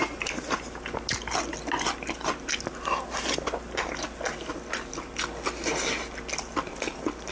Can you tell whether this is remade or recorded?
recorded